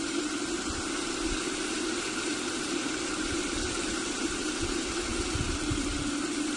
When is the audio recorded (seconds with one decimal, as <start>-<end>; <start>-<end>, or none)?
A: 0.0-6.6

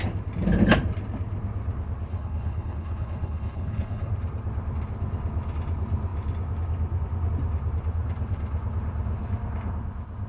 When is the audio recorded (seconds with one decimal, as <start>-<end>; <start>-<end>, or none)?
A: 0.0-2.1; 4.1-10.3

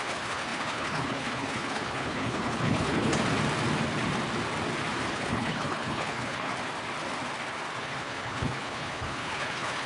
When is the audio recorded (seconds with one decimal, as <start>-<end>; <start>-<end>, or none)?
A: 3.1-5.1; 6.5-7.8

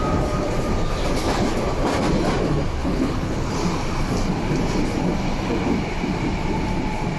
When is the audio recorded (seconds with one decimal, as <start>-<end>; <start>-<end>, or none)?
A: 0.0-2.8; 3.5-7.2

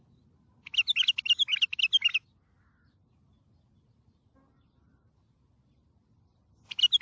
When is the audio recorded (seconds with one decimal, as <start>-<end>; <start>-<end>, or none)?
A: 0.0-7.0

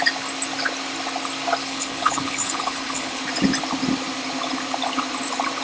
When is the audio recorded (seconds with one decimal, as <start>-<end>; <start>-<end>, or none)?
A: 0.0-1.6; 3.2-5.6

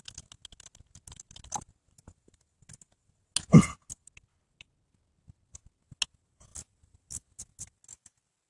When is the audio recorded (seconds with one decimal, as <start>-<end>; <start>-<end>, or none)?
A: 0.0-8.5

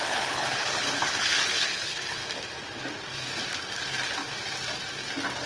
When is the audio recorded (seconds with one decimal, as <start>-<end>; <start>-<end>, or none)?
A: 2.2-5.5